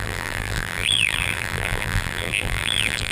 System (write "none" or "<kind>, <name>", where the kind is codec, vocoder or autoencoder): vocoder, BigVGAN v2